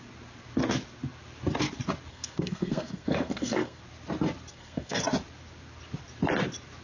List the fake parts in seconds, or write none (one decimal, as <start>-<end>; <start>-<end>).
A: 2.1-3.8; 4.5-5.0